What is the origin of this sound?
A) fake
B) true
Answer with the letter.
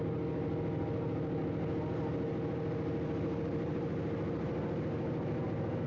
B